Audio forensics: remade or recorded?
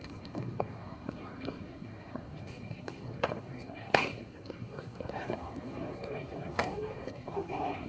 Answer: remade